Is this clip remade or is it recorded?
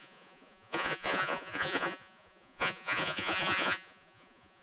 remade